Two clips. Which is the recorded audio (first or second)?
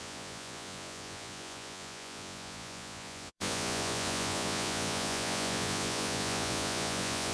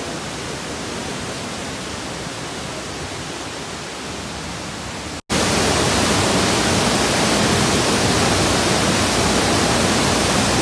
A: second